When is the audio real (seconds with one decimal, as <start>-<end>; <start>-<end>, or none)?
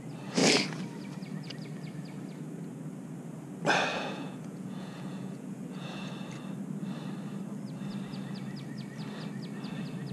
0.0-3.9; 6.1-10.1